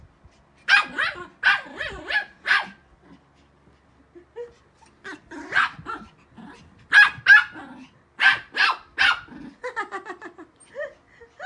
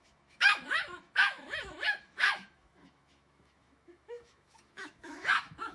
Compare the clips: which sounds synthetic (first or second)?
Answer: second